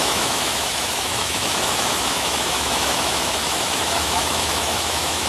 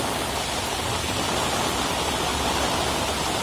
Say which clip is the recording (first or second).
second